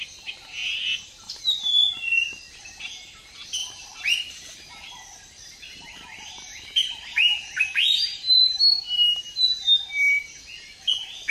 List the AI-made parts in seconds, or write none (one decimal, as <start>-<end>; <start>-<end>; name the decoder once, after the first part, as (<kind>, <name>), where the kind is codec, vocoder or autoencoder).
3.6-8.6 (vocoder, BigVGAN v2)